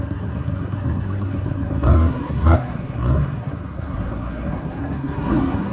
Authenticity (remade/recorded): remade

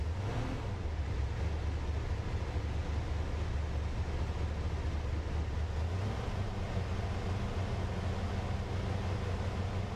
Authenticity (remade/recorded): recorded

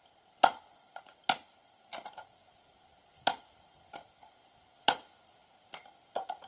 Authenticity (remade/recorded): recorded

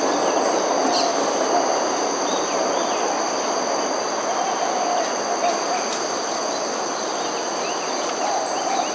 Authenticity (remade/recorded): recorded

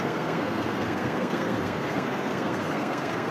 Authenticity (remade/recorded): remade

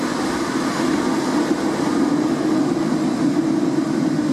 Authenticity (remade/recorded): recorded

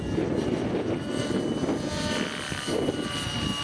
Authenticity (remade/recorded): recorded